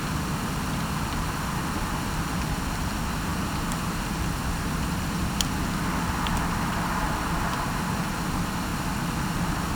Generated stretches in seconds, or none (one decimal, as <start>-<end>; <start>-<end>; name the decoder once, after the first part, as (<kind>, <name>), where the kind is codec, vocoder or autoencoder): 3.3-8.0 (vocoder, BigVGAN v2); 8.7-9.8